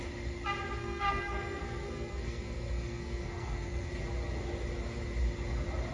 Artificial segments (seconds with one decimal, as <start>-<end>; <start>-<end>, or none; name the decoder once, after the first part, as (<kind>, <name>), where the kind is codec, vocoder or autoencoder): 0.8-3.9 (codec, SNAC)